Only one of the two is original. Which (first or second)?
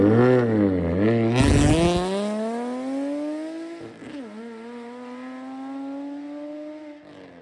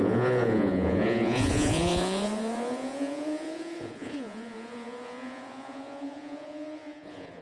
first